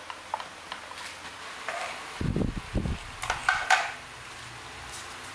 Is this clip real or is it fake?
real